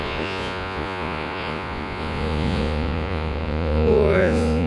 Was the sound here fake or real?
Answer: fake